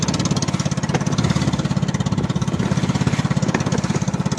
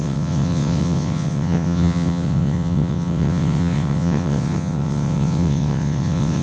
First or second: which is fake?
second